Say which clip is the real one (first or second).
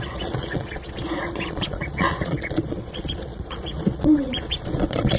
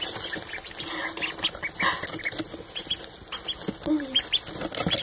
second